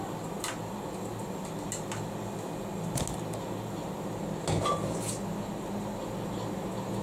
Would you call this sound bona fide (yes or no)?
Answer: yes